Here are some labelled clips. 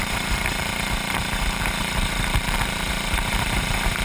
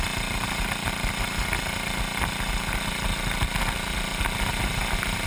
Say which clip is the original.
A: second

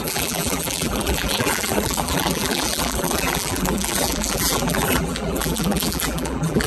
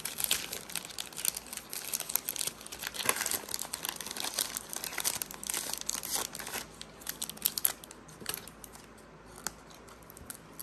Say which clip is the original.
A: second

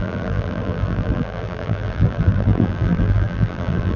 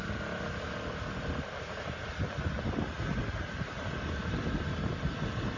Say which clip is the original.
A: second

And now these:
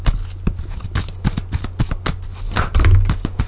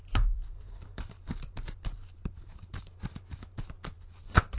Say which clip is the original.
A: first